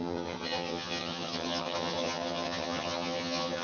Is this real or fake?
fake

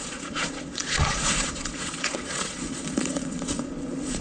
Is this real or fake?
fake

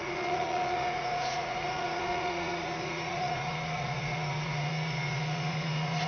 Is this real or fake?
fake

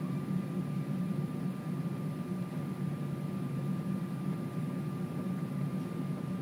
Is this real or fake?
real